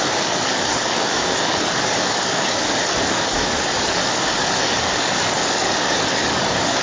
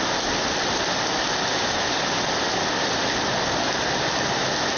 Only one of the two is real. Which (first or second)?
second